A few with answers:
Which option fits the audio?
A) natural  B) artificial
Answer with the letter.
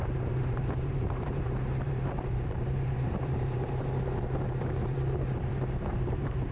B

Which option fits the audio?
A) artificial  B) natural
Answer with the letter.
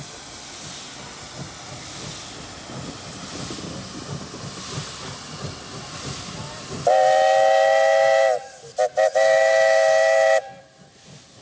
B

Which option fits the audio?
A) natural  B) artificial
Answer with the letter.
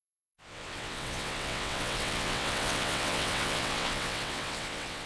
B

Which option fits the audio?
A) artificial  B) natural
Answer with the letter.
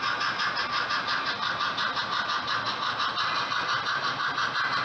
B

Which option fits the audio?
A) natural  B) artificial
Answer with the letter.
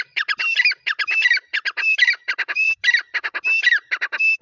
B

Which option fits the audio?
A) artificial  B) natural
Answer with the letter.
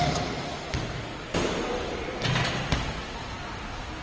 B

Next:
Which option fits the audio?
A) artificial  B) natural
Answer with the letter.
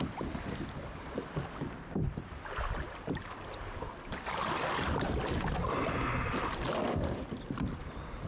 B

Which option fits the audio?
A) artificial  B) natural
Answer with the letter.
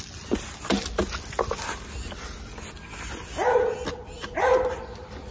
B